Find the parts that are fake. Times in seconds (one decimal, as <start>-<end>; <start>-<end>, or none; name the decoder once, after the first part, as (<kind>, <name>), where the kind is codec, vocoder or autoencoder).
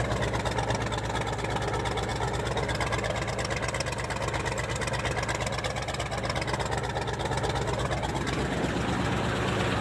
none